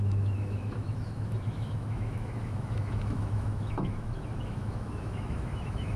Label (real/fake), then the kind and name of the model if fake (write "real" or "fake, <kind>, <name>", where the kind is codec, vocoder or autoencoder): fake, autoencoder, DAC-VAE